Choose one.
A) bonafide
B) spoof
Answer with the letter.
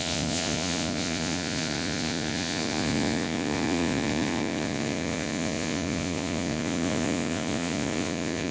B